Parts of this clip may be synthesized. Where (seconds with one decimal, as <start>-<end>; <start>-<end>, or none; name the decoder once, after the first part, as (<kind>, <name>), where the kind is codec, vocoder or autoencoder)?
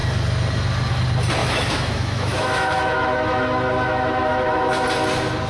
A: 1.4-4.7 (autoencoder, DAC-VAE)